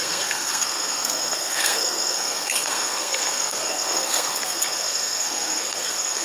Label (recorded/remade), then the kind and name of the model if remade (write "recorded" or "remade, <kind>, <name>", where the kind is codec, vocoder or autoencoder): remade, codec, SNAC